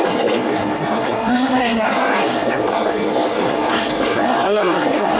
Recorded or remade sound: remade